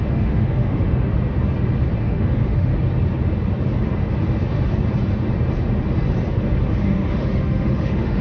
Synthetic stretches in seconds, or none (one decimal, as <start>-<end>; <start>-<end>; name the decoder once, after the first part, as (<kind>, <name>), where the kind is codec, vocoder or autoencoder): 0.0-1.1 (autoencoder, DAC-VAE); 2.0-2.7; 6.7-8.2